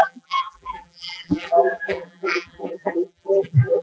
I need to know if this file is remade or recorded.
remade